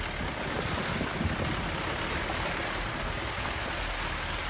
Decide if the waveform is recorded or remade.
recorded